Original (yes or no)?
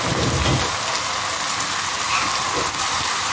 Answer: yes